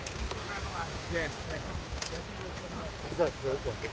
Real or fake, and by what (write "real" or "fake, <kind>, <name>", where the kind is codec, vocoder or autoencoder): fake, codec, DAC